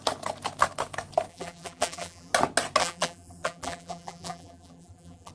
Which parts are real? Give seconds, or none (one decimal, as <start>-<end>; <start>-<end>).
0.0-1.3; 2.3-2.8